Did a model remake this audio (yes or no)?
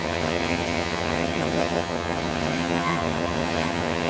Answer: yes